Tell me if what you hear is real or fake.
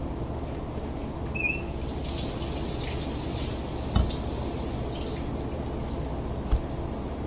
real